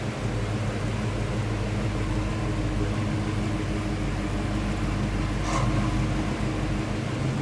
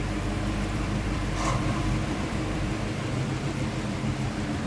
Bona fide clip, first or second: first